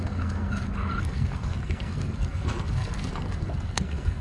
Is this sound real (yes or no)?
no